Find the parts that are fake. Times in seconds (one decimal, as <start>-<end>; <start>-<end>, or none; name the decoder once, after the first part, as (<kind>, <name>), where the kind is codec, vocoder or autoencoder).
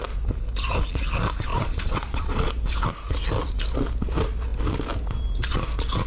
1.5-2.5 (vocoder, Vocos)